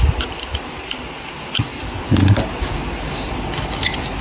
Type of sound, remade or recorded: recorded